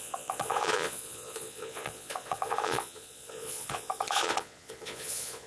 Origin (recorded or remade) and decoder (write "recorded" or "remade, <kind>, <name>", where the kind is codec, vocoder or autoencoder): remade, vocoder, Vocos